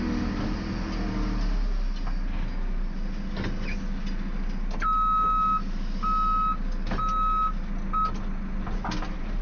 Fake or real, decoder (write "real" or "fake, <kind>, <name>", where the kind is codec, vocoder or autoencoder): real